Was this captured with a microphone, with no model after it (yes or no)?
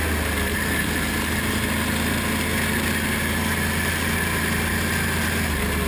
yes